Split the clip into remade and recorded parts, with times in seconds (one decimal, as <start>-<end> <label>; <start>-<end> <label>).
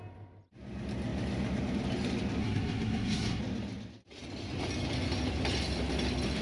0.0-2.4 recorded; 2.4-3.4 remade; 3.4-6.4 recorded